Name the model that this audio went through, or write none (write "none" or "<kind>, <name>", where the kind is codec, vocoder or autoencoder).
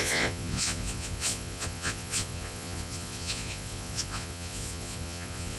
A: vocoder, Vocos